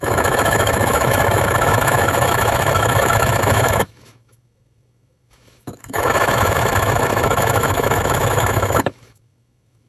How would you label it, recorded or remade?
remade